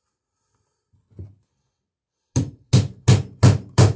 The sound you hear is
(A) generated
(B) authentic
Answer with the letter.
B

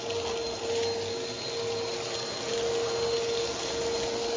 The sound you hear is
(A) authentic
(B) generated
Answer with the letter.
A